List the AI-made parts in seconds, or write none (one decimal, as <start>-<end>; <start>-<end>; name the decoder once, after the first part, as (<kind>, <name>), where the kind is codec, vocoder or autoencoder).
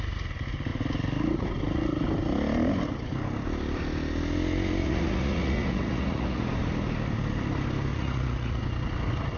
4.8-6.4 (vocoder, Vocos); 7.9-8.6